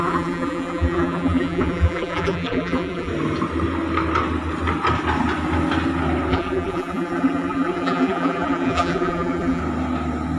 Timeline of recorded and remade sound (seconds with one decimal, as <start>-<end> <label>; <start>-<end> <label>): 0.0-3.1 remade; 3.1-6.3 recorded; 6.3-9.6 remade; 9.6-10.4 recorded